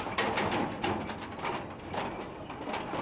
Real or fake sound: real